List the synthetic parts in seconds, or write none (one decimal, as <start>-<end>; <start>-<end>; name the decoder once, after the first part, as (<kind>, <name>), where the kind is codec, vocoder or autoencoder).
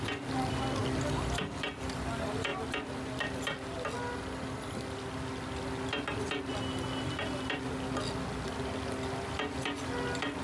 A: none